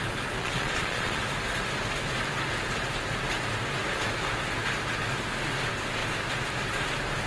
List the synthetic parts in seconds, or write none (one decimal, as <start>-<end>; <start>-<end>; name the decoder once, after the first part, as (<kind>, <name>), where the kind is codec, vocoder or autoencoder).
0.4-1.2 (vocoder, Vocos)